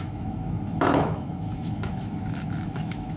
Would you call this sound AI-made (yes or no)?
yes